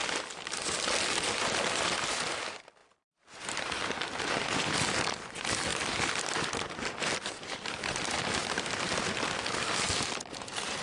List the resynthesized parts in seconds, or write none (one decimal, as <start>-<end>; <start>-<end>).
2.8-3.9; 5.7-7.8